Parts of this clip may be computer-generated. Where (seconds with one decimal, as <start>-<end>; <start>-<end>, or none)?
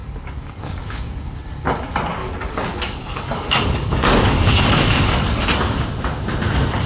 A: 0.0-1.4; 2.2-5.4